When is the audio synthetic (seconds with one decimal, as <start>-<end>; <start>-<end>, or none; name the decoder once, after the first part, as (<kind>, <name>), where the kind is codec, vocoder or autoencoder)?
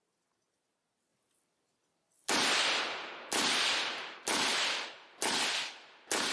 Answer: 1.1-2.3 (vocoder, BigVGAN v2); 4.5-5.3